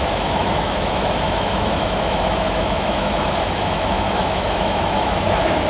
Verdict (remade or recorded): remade